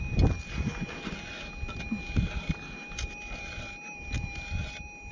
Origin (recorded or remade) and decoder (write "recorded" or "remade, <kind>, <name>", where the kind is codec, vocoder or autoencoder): recorded